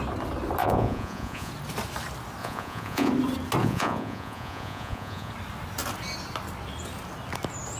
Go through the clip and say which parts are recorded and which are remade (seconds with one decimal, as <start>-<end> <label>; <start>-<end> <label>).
0.0-0.6 recorded; 0.6-1.5 remade; 1.5-2.4 recorded; 2.4-3.1 remade; 3.1-3.6 recorded; 3.6-5.3 remade; 5.3-7.8 recorded